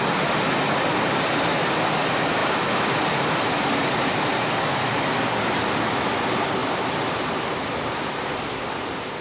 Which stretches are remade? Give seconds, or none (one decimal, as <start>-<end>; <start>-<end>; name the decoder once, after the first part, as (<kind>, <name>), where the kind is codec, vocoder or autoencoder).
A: none